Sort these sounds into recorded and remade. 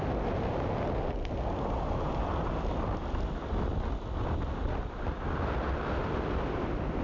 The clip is recorded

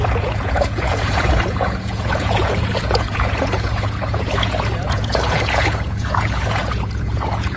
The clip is remade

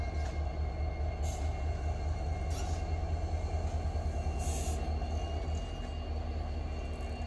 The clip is recorded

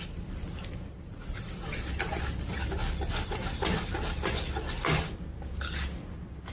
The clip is recorded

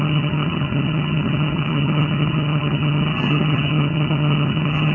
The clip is remade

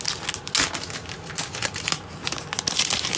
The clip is recorded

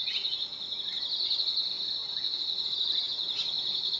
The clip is recorded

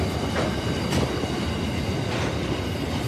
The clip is recorded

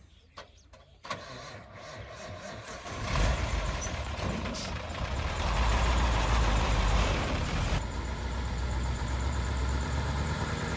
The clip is remade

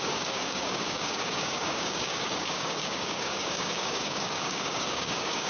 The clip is remade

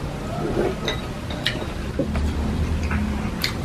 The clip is recorded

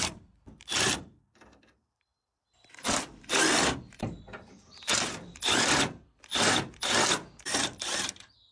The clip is remade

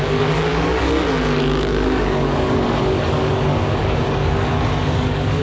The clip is remade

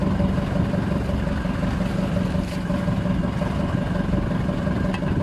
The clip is recorded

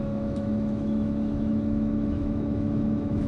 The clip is remade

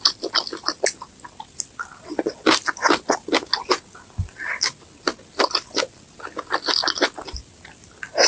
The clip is recorded